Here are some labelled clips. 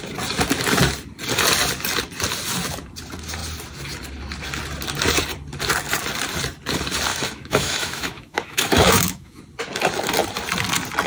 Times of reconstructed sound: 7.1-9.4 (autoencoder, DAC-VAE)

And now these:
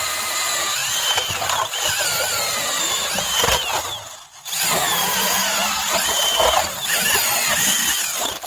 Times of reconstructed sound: none

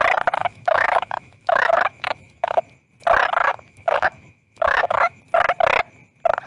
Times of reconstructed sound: 0.4-2.6 (autoencoder, DAC-VAE); 3.4-5.2

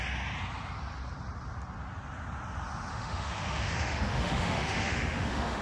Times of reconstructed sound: 2.9-5.6 (autoencoder, DAC-VAE)